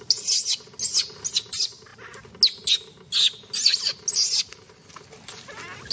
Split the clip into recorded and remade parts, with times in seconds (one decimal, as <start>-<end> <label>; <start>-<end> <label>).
0.0-5.9 recorded